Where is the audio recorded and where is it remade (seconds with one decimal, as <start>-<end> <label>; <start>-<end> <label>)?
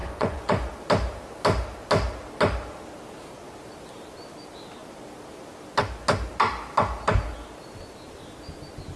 0.0-0.7 remade; 0.7-9.0 recorded